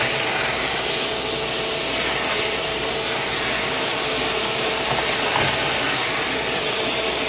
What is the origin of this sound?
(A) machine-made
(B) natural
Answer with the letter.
B